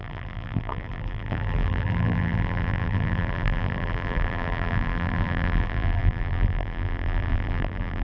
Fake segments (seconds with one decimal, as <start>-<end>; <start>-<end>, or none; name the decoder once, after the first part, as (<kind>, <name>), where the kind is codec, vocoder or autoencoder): 0.0-8.0 (vocoder, BigVGAN v2)